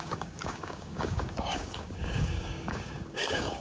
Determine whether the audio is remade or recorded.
remade